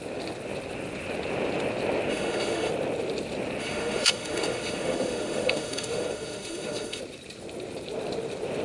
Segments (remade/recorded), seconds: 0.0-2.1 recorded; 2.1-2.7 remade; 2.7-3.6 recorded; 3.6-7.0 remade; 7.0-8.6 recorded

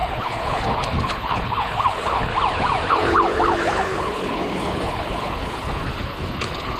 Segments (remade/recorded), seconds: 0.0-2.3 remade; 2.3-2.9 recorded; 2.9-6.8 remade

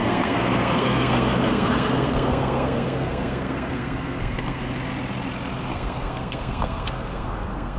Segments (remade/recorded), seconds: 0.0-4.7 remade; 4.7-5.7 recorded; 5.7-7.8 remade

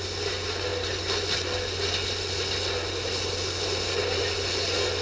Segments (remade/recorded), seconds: 0.0-5.0 recorded

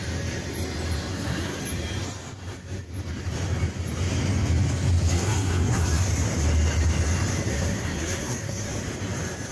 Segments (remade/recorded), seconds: 0.0-1.1 recorded; 1.1-1.6 remade; 1.6-5.1 recorded; 5.1-6.0 remade; 6.0-7.5 recorded; 7.5-8.7 remade; 8.7-9.5 recorded

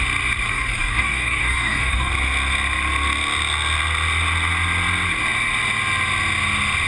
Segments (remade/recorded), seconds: 0.0-0.5 recorded; 0.5-2.1 remade; 2.1-6.9 recorded

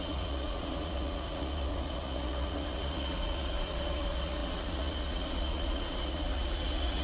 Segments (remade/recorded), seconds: 0.0-7.0 remade

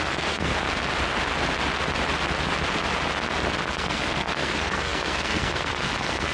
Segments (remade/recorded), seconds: 0.0-0.5 remade; 0.5-3.7 recorded; 3.7-6.3 remade